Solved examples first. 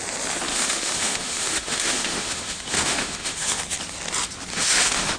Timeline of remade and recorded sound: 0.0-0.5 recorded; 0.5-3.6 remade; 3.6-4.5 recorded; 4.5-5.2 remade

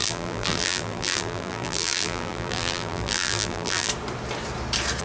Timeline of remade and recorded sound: 0.0-3.9 remade; 3.9-5.0 recorded

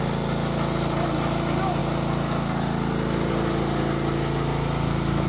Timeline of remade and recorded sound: 0.0-5.3 recorded